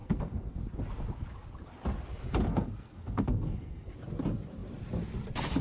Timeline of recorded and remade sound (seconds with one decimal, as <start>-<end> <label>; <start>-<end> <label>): 0.0-0.6 remade; 0.6-2.5 recorded; 2.5-3.9 remade; 3.9-5.6 recorded